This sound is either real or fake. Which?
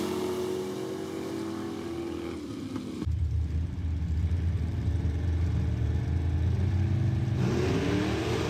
real